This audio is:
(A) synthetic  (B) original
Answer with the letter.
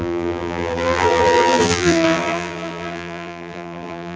A